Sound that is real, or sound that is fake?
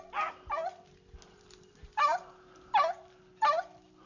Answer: real